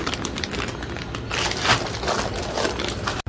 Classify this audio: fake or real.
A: real